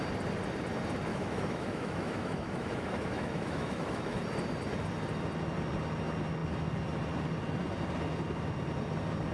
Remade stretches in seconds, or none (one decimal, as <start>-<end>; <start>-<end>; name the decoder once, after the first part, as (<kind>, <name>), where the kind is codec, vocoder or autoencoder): 1.1-4.2 (autoencoder, DAC-VAE)